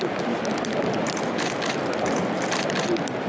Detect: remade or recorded recorded